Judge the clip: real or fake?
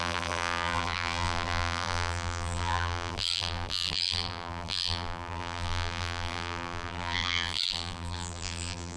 fake